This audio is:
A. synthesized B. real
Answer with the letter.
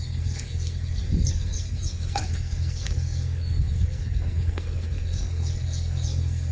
A